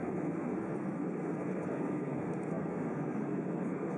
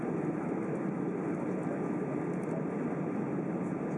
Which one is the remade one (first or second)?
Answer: first